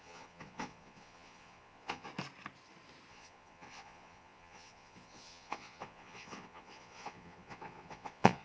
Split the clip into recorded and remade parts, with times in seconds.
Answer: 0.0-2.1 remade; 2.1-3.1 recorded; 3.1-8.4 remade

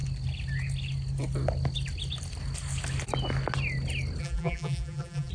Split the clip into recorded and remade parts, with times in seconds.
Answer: 0.0-4.2 recorded; 4.2-5.3 remade

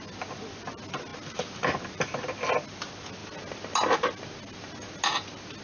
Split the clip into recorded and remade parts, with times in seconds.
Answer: 0.0-5.6 recorded

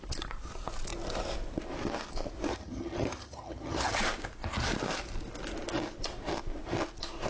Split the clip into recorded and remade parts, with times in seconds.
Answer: 0.0-2.5 recorded; 2.5-4.0 remade; 4.0-7.3 recorded

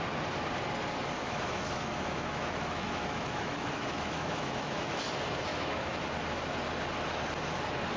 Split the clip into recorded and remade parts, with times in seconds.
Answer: 0.0-1.2 recorded; 1.2-5.0 remade; 5.0-5.5 recorded; 5.5-6.0 remade; 6.0-8.0 recorded

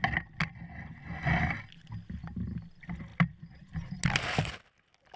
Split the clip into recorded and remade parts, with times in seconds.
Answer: 0.0-5.2 recorded

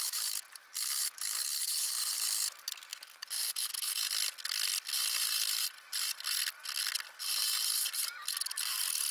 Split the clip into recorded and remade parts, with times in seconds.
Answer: 0.0-1.5 recorded; 1.5-2.1 remade; 2.1-9.1 recorded

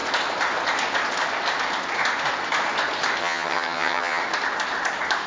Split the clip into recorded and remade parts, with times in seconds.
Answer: 0.0-3.2 recorded; 3.2-4.2 remade; 4.2-5.3 recorded